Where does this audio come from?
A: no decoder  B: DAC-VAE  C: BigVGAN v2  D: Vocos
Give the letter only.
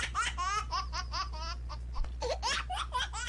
A